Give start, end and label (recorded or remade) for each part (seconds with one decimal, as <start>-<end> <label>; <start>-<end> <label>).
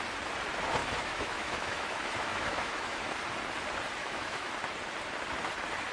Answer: 0.0-0.8 recorded; 0.8-3.1 remade; 3.1-4.0 recorded; 4.0-4.5 remade; 4.5-5.9 recorded